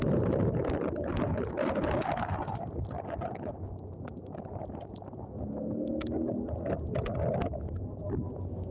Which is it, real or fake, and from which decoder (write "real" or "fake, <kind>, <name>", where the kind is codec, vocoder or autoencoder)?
real